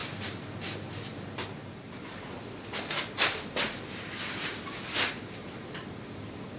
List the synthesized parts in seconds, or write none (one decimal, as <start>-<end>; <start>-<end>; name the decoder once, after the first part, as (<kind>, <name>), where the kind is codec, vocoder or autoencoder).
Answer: none